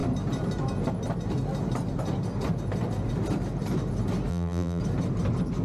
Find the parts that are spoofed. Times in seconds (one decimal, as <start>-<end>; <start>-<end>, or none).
4.3-4.8